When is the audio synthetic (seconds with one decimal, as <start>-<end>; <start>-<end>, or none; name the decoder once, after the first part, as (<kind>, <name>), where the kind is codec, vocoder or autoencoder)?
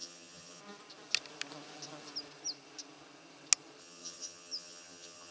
0.0-0.6 (vocoder, HiFi-GAN); 3.8-5.3